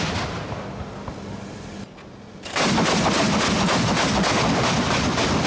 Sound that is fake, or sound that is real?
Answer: real